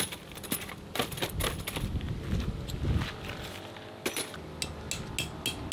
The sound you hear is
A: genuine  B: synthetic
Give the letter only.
A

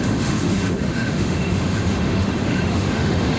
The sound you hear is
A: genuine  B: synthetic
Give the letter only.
B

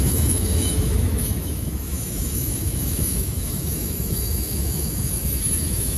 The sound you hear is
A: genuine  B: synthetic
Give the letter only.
B